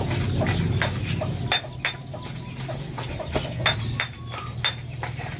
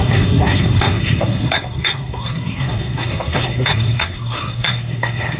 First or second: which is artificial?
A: second